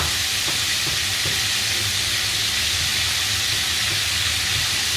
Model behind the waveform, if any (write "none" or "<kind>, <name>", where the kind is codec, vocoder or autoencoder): none